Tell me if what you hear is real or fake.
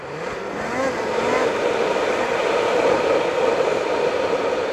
fake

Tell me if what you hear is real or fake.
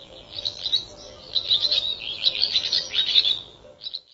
fake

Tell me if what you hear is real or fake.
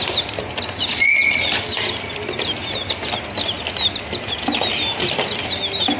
real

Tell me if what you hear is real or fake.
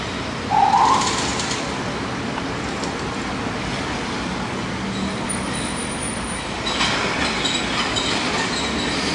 real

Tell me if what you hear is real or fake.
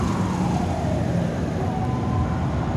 real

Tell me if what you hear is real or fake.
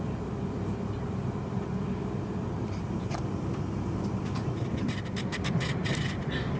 fake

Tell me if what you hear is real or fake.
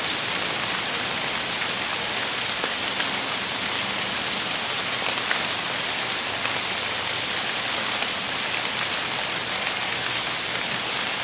fake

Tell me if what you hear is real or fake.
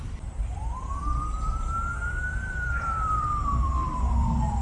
fake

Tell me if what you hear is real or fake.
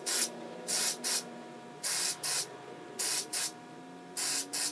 real